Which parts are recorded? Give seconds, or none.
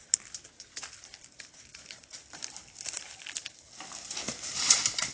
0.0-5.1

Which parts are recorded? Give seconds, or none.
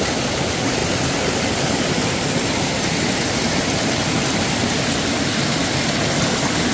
0.0-6.7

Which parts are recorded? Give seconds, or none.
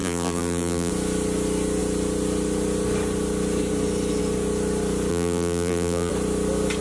0.9-5.1; 6.1-6.8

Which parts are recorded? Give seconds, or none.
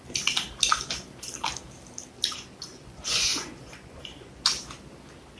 0.0-2.7; 4.3-5.4